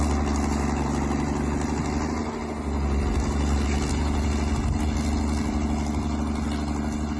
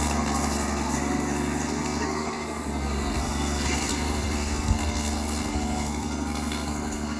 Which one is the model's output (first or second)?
second